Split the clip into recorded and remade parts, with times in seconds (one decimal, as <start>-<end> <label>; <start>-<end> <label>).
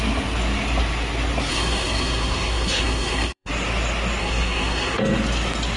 0.0-1.5 recorded; 1.5-3.5 remade; 3.5-4.2 recorded; 4.2-5.0 remade; 5.0-5.8 recorded